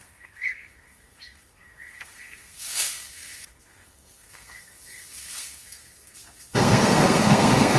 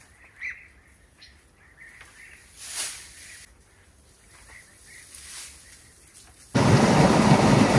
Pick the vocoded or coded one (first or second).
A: first